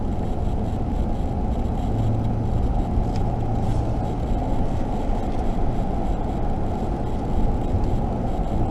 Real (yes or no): yes